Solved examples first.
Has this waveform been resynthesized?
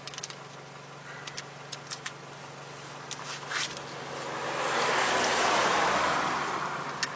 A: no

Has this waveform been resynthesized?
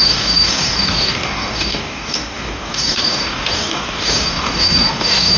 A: yes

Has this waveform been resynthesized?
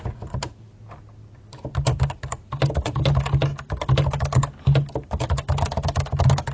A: no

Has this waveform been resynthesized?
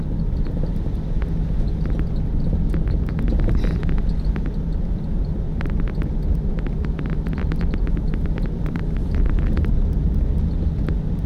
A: no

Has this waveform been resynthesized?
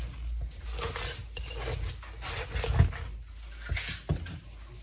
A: no